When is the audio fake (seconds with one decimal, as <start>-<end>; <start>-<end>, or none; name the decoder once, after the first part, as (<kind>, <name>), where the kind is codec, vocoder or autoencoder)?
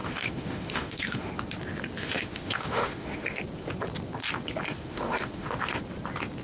0.0-1.3 (autoencoder, DAC-VAE); 2.0-3.4; 4.8-5.8